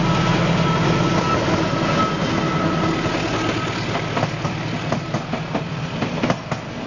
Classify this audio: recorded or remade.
recorded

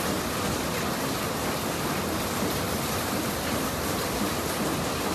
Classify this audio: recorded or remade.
remade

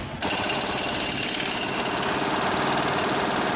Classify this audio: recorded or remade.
recorded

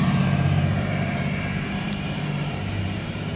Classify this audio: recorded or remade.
remade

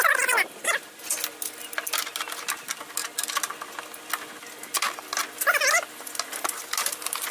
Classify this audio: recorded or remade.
recorded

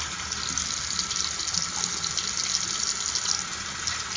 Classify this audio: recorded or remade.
recorded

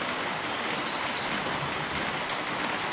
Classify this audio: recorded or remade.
remade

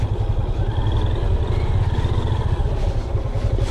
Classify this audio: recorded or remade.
recorded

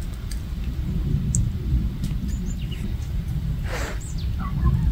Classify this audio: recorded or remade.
recorded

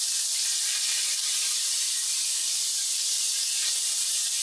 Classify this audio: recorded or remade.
remade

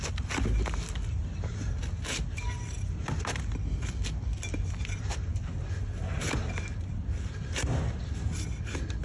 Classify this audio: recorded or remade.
recorded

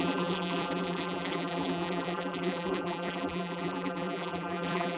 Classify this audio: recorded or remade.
remade